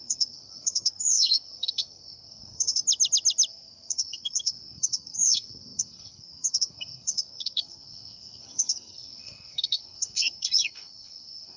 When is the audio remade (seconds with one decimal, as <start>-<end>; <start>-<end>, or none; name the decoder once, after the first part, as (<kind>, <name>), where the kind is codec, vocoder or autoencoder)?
0.0-2.8 (codec, SNAC); 3.5-11.6